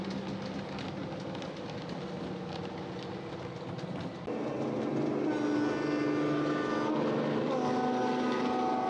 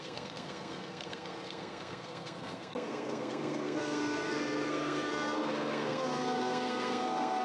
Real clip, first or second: first